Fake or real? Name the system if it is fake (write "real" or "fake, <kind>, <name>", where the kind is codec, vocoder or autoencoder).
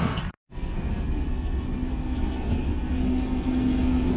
fake, codec, SNAC